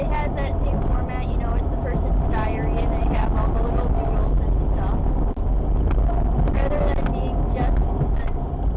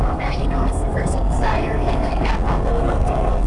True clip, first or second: first